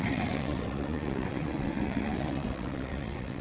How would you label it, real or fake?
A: fake